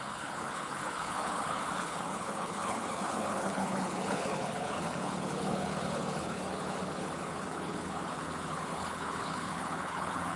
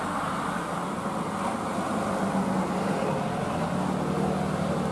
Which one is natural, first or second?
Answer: second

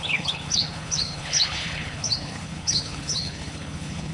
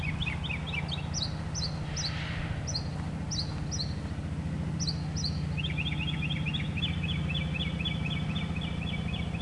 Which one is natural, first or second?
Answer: second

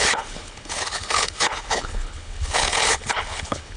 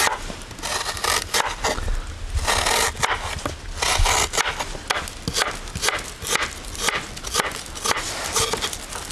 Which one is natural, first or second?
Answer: second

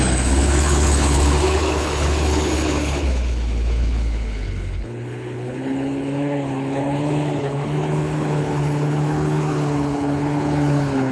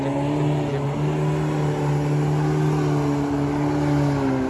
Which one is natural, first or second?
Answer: second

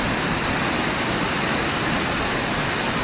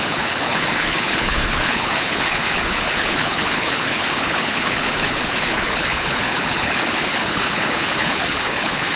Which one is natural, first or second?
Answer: first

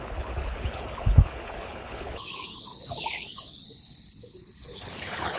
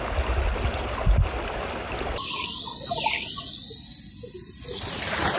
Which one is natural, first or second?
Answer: second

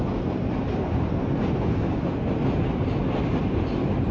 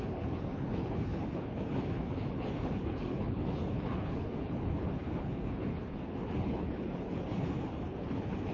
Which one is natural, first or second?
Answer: first